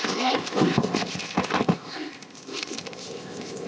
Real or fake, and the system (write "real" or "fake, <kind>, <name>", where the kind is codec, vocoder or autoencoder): fake, codec, ZipCodec